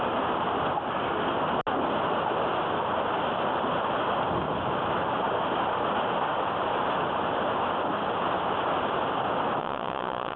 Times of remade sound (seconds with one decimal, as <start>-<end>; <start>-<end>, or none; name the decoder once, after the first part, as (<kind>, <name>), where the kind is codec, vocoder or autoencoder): 9.6-10.4 (vocoder, Vocos)

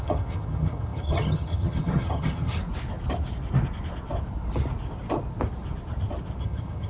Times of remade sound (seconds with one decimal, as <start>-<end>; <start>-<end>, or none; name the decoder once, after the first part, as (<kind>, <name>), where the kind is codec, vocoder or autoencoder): 0.0-2.6 (vocoder, HiFi-GAN); 6.4-6.9

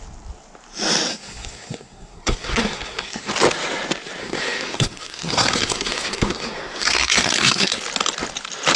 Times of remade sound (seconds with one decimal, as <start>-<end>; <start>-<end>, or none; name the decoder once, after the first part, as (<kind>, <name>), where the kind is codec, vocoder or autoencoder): 1.1-3.3 (codec, SNAC); 4.2-7.8

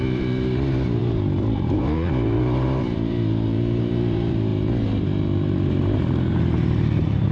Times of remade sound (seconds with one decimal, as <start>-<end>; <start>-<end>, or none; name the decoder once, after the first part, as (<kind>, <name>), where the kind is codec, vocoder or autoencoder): 0.0-7.3 (vocoder, BigVGAN v2)

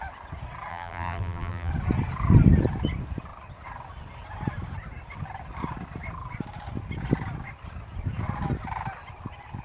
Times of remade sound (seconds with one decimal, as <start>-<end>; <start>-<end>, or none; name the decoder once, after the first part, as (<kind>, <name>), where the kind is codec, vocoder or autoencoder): 0.7-1.7 (vocoder, BigVGAN v2)

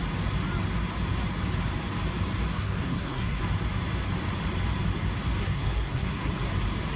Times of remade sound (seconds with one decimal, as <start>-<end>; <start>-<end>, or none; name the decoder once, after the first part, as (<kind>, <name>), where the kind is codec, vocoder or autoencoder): 2.5-3.4 (codec, SNAC); 5.4-6.3

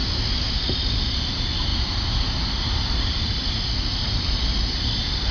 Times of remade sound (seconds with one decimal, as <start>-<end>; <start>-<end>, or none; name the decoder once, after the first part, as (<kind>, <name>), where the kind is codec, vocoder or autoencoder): none